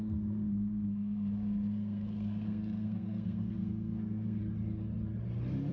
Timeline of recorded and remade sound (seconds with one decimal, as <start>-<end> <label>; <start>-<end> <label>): 0.0-4.4 remade; 4.4-5.7 recorded